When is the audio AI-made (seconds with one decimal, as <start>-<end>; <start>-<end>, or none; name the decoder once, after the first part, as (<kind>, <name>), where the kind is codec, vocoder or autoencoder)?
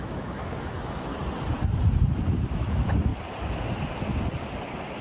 0.0-1.1 (autoencoder, DAC-VAE); 2.4-3.1